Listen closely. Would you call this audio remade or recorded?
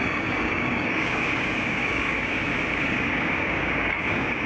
remade